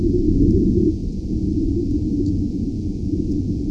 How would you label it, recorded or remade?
remade